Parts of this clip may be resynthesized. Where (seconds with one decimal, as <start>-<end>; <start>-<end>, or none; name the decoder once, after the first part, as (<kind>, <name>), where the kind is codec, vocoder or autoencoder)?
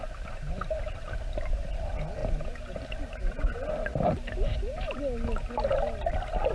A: none